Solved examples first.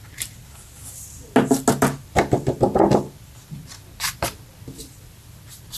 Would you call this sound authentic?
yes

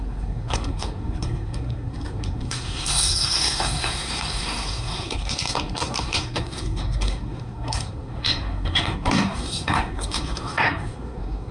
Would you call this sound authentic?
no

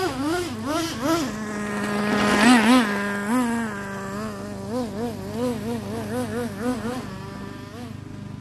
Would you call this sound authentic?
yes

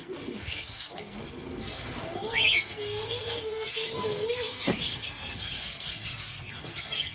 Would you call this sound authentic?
no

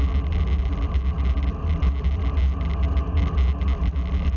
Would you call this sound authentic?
yes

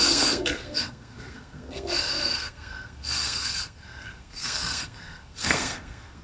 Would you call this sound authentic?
no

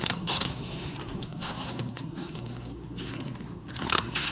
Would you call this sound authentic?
no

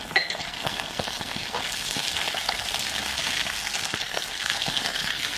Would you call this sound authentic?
no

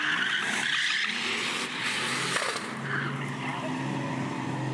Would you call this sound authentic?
yes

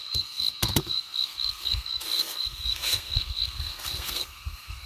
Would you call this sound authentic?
no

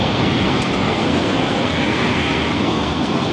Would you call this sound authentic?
no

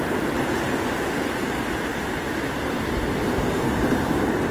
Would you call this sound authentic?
yes